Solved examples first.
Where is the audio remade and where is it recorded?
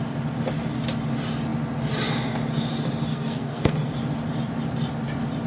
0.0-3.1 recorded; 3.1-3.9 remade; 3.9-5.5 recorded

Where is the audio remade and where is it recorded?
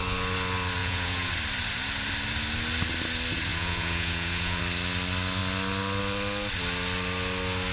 0.0-0.8 recorded; 0.8-1.3 remade; 1.3-3.5 recorded; 3.5-4.6 remade; 4.6-7.7 recorded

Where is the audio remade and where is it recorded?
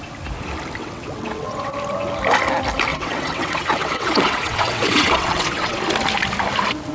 0.0-0.8 recorded; 0.8-1.7 remade; 1.7-2.9 recorded; 2.9-5.8 remade; 5.8-6.9 recorded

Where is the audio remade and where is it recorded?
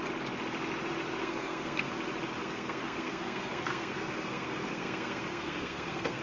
0.0-1.2 recorded; 1.2-1.9 remade; 1.9-2.4 recorded; 2.4-6.2 remade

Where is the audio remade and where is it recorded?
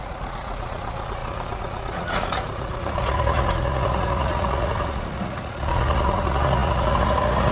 0.0-7.5 remade